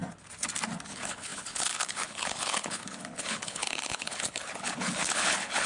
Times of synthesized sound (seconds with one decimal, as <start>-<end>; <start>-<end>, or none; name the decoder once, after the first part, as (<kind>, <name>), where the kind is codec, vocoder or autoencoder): 0.9-5.7 (codec, HILCodec)